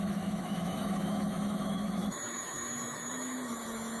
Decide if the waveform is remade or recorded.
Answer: remade